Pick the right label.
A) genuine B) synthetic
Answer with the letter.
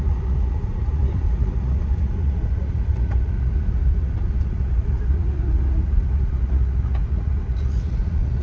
B